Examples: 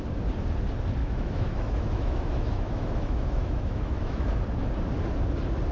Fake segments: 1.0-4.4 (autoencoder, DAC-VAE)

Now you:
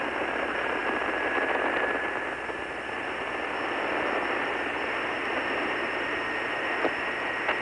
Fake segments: none

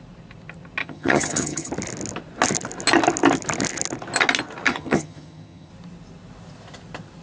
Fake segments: 0.8-1.7 (vocoder, HiFi-GAN); 4.7-5.7

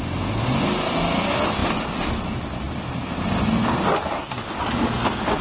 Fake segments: none